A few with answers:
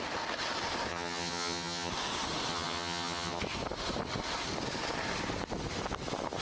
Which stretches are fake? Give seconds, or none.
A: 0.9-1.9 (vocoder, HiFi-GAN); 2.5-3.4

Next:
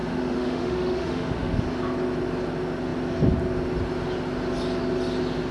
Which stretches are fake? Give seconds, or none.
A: 0.0-1.6 (autoencoder, DAC-VAE)

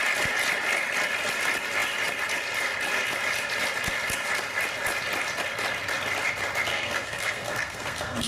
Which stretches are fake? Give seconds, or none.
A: 6.7-8.3 (codec, SNAC)

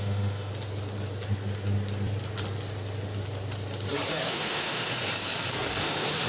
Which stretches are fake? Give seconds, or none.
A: 0.0-0.5 (autoencoder, DAC-VAE); 4.3-4.9; 5.8-6.3